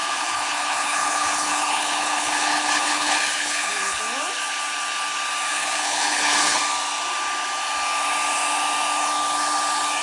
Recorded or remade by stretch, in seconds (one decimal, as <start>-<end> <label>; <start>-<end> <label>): 0.0-4.0 remade; 4.0-5.5 recorded; 5.5-6.6 remade; 6.6-10.0 recorded